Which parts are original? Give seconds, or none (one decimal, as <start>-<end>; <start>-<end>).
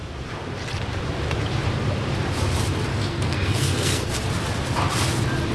0.0-2.9; 4.1-5.5